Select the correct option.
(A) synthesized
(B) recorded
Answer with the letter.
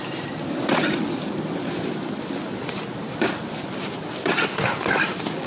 B